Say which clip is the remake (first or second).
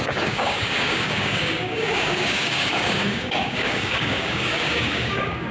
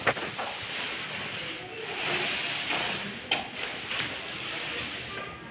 first